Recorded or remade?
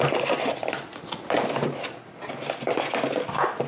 recorded